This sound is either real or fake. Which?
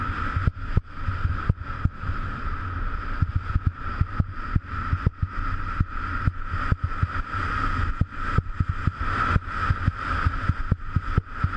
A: real